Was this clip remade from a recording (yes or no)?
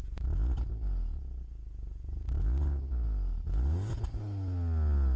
no